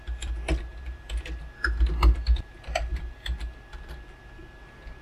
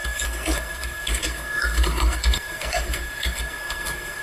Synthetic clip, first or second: second